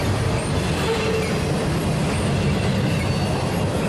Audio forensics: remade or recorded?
recorded